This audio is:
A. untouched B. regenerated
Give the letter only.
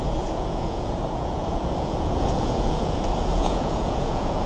B